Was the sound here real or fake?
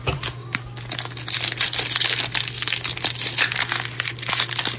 real